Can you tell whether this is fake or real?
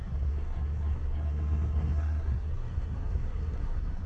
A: fake